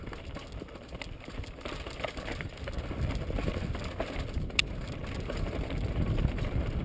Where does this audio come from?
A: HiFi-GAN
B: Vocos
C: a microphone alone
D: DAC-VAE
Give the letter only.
C